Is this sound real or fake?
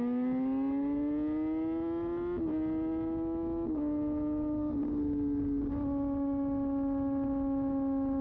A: real